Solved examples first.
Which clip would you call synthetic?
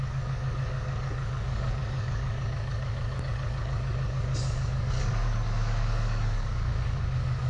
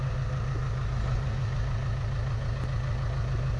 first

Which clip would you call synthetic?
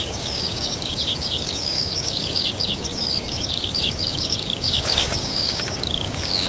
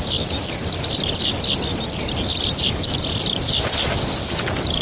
first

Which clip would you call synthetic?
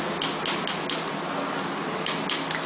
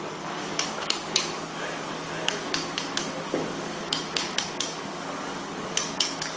second